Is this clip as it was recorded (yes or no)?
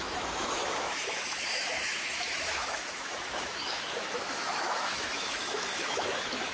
no